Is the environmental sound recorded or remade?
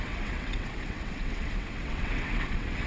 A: remade